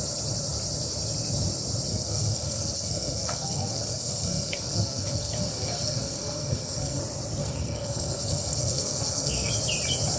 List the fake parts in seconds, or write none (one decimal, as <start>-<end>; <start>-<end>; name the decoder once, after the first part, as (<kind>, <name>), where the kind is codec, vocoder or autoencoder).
1.9-7.0 (codec, SNAC); 7.4-9.5